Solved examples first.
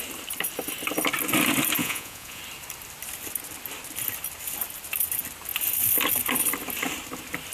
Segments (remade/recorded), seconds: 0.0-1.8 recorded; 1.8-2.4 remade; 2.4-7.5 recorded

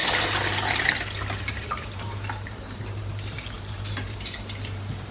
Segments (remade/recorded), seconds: 0.0-1.4 recorded; 1.4-5.1 remade

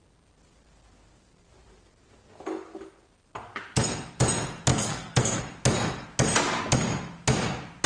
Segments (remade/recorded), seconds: 0.0-4.7 recorded; 4.7-5.4 remade; 5.4-7.9 recorded